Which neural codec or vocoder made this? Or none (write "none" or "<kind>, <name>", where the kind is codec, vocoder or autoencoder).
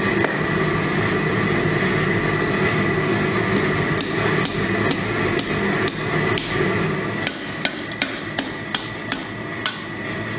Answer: none